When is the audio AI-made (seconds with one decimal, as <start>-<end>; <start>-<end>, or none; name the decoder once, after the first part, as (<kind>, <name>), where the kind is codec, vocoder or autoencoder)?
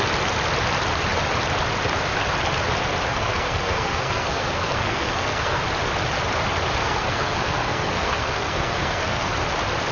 3.1-5.6 (codec, SNAC); 6.8-9.3